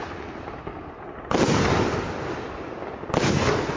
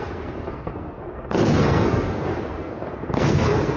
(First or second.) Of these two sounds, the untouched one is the first